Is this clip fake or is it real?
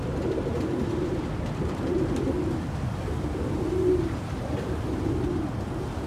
real